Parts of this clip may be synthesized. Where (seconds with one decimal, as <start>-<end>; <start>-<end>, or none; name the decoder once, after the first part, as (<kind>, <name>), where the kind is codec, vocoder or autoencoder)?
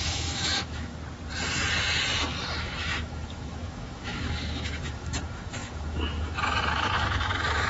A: 0.0-0.9 (autoencoder, DAC-VAE); 2.6-7.7